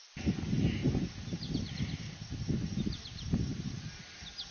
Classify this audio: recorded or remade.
recorded